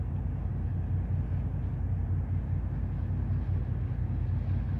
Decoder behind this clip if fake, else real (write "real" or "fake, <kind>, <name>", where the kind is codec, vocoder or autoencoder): real